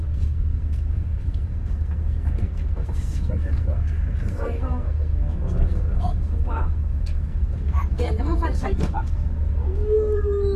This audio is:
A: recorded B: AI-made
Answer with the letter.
B